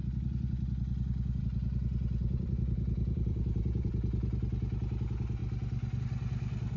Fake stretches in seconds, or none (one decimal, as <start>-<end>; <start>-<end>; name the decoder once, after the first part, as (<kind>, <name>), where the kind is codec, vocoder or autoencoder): 2.2-3.9 (vocoder, BigVGAN v2)